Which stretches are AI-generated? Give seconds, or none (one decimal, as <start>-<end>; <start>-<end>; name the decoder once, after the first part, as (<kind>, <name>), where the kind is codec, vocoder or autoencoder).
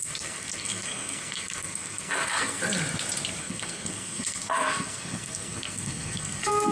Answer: 0.0-2.6 (codec, SNAC); 3.4-6.7